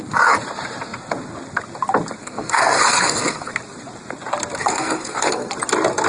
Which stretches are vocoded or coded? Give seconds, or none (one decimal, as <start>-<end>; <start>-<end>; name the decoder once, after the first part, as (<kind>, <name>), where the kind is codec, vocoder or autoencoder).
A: 2.2-3.5 (codec, SNAC); 4.6-5.5